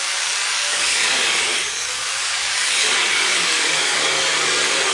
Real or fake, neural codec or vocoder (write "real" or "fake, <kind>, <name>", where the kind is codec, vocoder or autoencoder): fake, codec, DAC